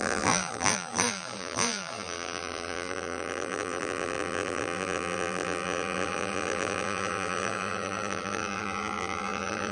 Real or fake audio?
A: fake